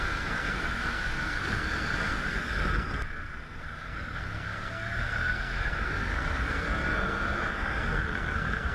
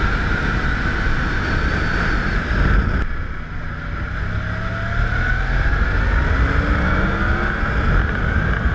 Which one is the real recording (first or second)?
second